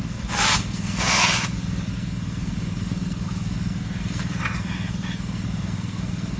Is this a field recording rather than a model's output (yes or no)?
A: no